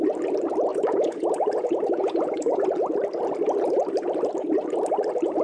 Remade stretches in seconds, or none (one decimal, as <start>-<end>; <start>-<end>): 0.7-2.7